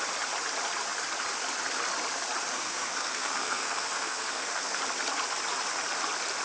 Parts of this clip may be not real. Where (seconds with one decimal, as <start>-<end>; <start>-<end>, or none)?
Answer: 2.5-4.8